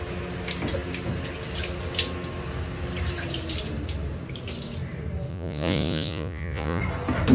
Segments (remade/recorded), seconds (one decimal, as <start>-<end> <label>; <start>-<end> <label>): 0.0-5.3 recorded; 5.3-6.8 remade; 6.8-7.3 recorded